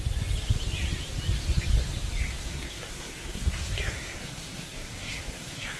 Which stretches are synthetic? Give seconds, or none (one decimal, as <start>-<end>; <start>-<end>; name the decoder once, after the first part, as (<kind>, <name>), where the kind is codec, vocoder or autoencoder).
2.3-5.8 (codec, SNAC)